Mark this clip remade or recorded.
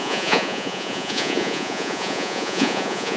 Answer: remade